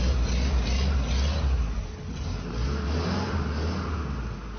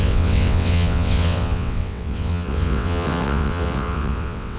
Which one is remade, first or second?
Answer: second